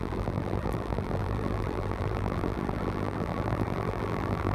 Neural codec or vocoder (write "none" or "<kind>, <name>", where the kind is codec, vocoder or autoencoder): vocoder, BigVGAN v2